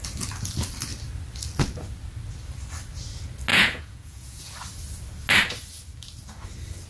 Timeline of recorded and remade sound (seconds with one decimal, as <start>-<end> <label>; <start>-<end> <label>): 0.0-3.5 recorded; 3.5-4.5 remade; 4.5-6.9 recorded